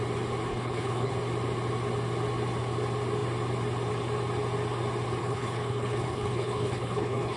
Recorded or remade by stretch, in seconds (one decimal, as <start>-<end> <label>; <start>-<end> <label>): 0.0-0.5 recorded; 0.5-1.1 remade; 1.1-5.2 recorded; 5.2-7.4 remade